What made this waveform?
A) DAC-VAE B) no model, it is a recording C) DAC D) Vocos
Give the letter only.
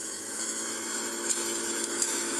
A